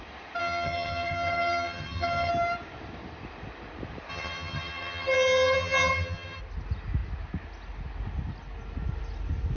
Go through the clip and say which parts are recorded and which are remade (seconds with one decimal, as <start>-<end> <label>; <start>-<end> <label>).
0.0-0.4 recorded; 0.4-2.3 remade; 2.3-4.1 recorded; 4.1-6.4 remade; 6.4-9.6 recorded